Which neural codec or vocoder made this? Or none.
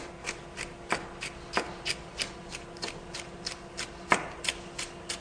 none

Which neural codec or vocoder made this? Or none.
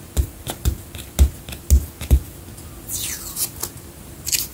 none